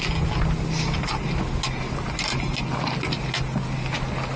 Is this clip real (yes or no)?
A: yes